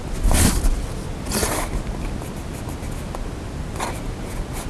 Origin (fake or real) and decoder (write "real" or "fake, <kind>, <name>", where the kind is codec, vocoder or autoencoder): real